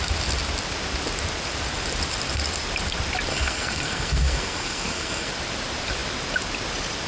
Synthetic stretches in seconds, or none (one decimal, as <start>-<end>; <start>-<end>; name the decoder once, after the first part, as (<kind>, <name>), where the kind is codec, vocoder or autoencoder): 3.3-5.3 (codec, SNAC)